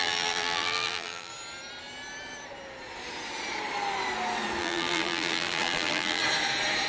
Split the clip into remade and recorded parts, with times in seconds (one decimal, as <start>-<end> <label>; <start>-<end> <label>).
0.0-1.3 remade; 1.3-4.6 recorded; 4.6-6.2 remade; 6.2-6.9 recorded